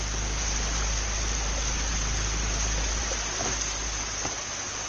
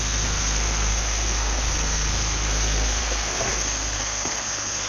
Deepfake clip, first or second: second